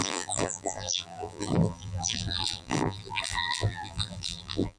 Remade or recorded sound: remade